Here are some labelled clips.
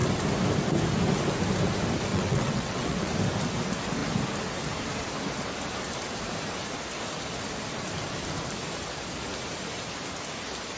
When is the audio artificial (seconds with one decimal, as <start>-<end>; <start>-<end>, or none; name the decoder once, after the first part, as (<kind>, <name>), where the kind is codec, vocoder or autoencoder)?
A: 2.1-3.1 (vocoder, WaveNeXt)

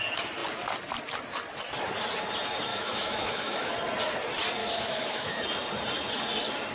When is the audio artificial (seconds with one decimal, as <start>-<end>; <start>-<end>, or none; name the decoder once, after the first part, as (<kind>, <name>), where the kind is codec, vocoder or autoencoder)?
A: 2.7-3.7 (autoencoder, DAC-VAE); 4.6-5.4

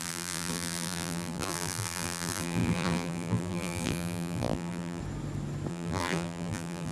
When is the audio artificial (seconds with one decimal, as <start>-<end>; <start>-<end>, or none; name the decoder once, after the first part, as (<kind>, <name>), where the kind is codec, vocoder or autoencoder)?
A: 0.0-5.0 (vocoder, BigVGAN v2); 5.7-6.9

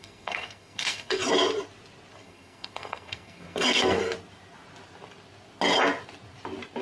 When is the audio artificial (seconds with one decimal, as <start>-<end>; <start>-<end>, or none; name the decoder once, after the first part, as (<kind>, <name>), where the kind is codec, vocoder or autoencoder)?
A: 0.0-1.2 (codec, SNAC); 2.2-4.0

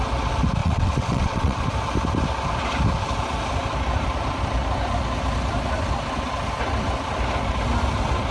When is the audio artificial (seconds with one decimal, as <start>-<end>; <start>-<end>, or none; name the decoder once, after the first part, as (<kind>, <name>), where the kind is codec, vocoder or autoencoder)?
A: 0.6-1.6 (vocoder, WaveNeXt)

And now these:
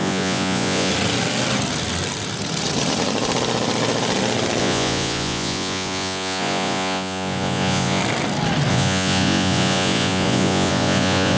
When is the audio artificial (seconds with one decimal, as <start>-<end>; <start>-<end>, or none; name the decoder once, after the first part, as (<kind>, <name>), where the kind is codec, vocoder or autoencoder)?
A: 0.0-0.9 (vocoder, Vocos); 4.6-8.0; 8.7-11.4

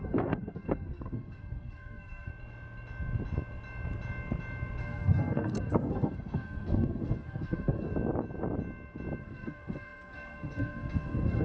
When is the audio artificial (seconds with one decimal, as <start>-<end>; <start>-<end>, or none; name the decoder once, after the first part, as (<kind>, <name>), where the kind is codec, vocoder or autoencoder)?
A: 0.0-2.3 (codec, SNAC); 4.8-7.9; 9.2-11.4